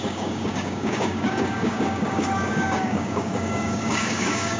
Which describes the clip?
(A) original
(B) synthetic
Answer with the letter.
B